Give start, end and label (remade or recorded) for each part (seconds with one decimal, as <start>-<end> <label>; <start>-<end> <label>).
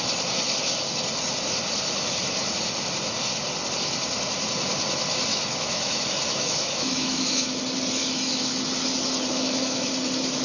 0.0-5.3 recorded; 5.3-7.6 remade; 7.6-8.0 recorded; 8.0-8.5 remade; 8.5-9.3 recorded; 9.3-9.9 remade; 9.9-10.4 recorded